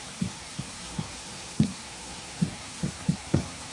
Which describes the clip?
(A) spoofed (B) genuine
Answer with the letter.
A